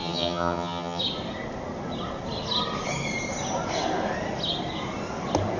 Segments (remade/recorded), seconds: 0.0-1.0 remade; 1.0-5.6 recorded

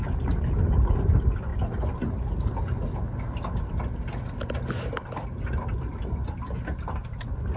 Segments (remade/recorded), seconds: 0.0-7.6 recorded